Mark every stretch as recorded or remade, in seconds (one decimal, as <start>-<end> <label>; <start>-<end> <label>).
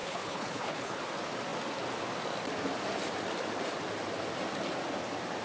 0.0-1.0 remade; 1.0-5.4 recorded